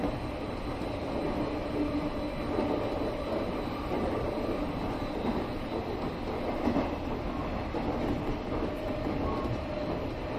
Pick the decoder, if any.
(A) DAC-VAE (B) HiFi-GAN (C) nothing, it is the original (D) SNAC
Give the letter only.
C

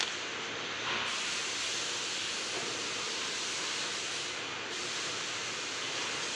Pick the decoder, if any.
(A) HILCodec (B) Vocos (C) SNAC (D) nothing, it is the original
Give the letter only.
D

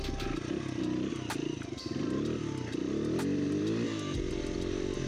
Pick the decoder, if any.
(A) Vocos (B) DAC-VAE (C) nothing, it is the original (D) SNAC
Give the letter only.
C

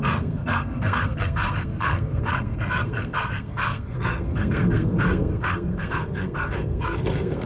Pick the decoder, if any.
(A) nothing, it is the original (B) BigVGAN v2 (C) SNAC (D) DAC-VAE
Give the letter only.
C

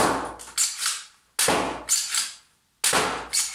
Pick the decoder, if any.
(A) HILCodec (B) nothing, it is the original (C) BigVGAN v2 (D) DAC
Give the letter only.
B